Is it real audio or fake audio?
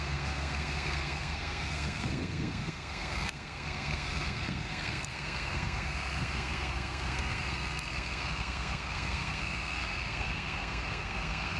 fake